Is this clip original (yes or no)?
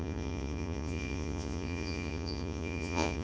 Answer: no